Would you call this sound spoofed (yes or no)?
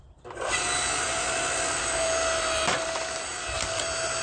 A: no